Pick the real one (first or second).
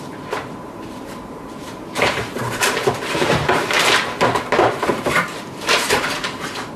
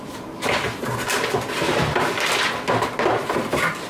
second